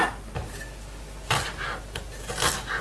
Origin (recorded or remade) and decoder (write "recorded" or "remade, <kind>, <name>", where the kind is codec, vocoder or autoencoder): recorded